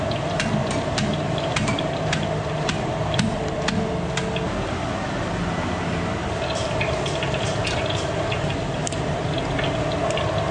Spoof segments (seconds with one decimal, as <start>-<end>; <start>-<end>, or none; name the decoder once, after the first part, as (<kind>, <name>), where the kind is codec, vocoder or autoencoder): 0.6-3.6 (vocoder, BigVGAN v2); 6.6-9.1